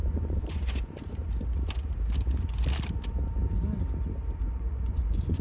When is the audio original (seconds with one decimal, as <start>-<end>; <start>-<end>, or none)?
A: 1.2-4.4